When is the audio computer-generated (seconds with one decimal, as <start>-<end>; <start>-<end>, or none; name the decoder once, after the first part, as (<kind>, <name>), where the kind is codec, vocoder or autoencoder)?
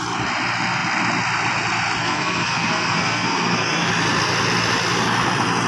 2.0-3.9 (codec, SNAC)